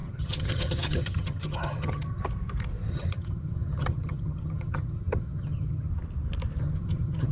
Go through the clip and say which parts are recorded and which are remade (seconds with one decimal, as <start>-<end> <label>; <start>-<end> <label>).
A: 0.0-2.2 remade; 2.2-2.9 recorded; 2.9-5.9 remade; 5.9-6.6 recorded; 6.6-7.3 remade